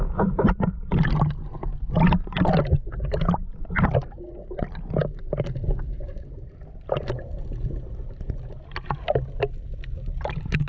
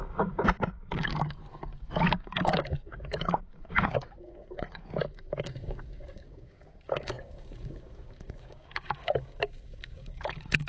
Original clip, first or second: first